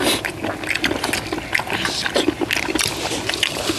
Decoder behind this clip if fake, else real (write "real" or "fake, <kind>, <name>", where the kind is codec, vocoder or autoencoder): real